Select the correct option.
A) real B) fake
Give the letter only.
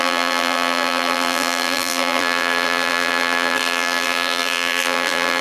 B